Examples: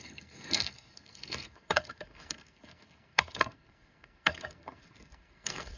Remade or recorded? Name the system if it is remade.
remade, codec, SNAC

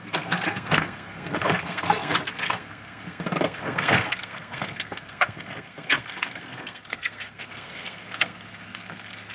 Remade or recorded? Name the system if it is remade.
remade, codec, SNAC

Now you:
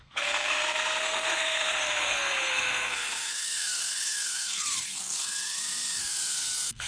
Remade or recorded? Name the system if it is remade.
remade, codec, SNAC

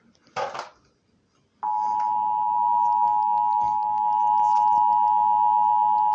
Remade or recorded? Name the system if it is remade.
recorded